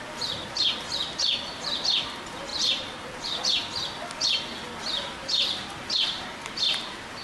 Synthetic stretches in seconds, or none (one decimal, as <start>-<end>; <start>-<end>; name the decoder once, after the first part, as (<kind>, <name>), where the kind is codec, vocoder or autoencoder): 2.5-3.4 (vocoder, BigVGAN v2); 4.8-5.8